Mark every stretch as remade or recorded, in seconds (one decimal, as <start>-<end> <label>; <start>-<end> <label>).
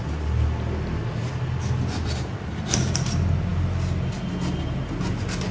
0.0-5.5 recorded